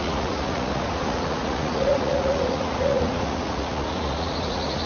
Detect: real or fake fake